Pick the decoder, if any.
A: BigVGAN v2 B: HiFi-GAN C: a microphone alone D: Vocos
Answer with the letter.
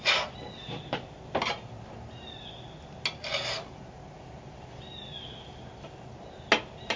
C